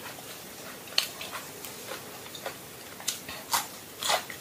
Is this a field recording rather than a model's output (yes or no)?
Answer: no